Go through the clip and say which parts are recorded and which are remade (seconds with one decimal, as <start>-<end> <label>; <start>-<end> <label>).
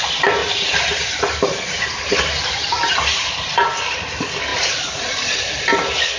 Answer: 0.0-0.4 recorded; 0.4-3.0 remade; 3.0-6.2 recorded